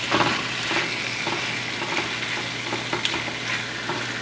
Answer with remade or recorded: recorded